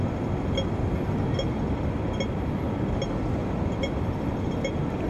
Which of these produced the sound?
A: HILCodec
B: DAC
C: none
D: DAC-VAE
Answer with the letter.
C